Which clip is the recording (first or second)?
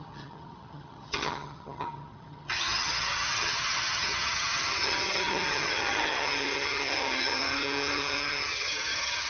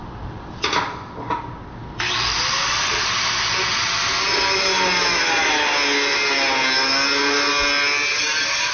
second